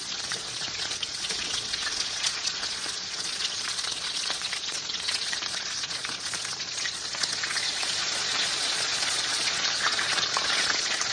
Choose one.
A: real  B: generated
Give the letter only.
B